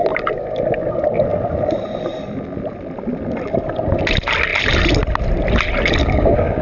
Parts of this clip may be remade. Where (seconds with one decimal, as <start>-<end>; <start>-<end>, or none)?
6.0-6.6